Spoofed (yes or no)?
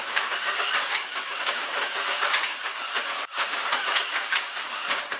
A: yes